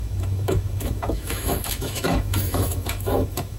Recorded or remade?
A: remade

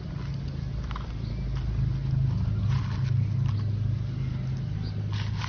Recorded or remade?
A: recorded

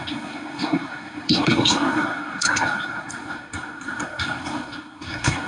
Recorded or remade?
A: remade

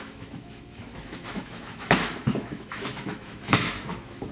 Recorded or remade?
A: remade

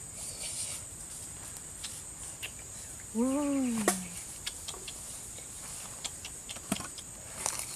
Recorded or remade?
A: recorded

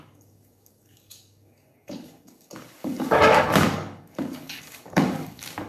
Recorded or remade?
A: remade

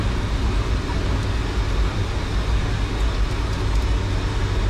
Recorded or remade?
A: recorded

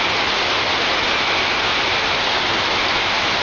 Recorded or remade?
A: recorded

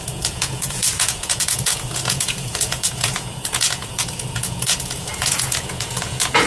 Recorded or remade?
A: remade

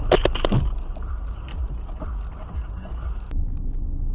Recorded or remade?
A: recorded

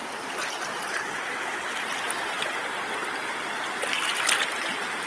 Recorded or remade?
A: recorded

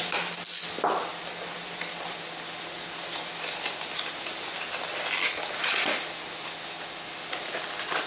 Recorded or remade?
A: recorded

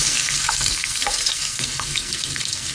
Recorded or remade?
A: remade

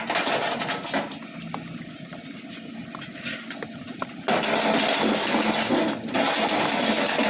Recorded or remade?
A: recorded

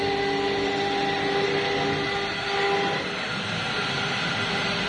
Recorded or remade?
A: recorded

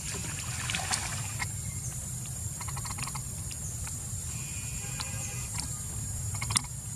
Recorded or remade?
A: recorded